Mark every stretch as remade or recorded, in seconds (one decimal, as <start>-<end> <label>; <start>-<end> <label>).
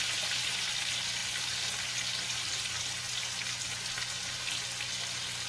0.0-5.5 recorded